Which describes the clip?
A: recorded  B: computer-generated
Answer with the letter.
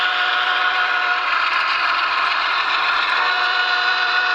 B